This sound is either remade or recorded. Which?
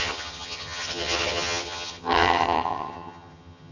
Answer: remade